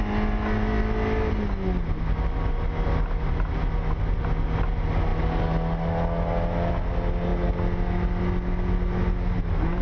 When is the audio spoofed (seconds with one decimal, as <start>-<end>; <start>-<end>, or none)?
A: none